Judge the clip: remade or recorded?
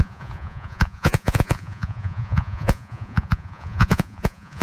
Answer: remade